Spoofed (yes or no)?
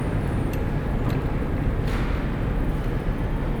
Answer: no